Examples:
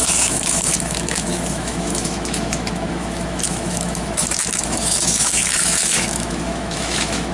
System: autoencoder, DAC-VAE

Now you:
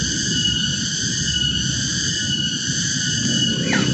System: vocoder, BigVGAN v2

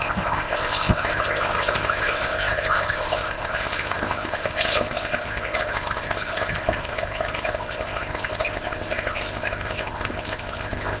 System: codec, ZipCodec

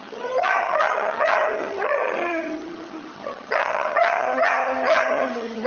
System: vocoder, HiFi-GAN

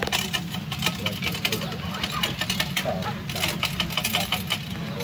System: none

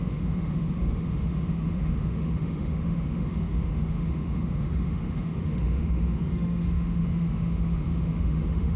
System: autoencoder, DAC-VAE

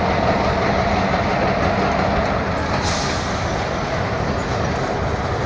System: none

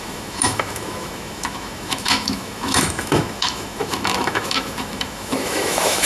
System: autoencoder, DAC-VAE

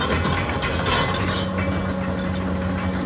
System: none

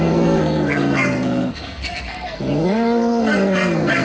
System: codec, SNAC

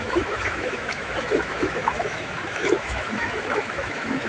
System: autoencoder, DAC-VAE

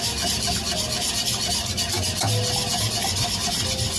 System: none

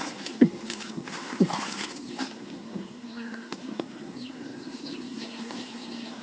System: codec, SNAC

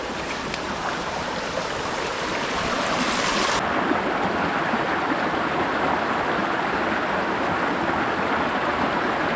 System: none